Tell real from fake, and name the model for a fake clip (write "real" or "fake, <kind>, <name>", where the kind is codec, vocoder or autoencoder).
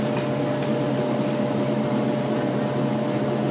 real